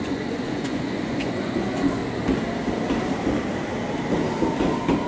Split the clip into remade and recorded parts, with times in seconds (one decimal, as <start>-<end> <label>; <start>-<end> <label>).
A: 0.0-2.0 remade; 2.0-5.1 recorded